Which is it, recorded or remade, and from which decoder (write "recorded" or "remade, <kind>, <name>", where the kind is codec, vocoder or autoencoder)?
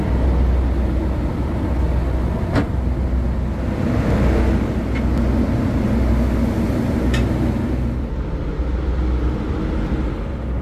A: recorded